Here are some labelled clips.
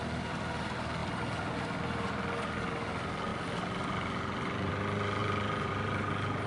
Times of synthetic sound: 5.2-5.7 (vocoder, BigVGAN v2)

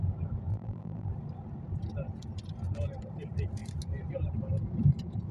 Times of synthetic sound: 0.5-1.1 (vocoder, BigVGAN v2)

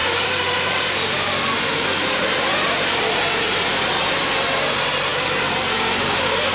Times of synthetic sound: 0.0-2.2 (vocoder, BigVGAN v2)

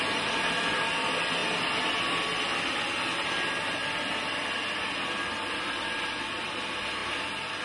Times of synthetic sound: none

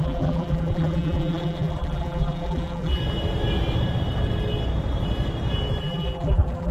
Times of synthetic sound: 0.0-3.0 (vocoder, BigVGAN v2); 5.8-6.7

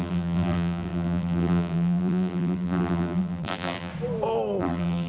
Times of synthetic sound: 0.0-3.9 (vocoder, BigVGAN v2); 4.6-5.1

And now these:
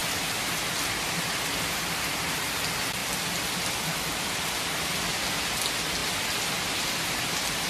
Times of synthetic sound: 3.0-5.4 (vocoder, BigVGAN v2); 6.0-7.3

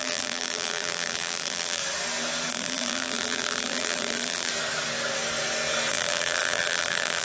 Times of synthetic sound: 0.0-1.8 (vocoder, BigVGAN v2); 2.5-4.5; 5.9-7.2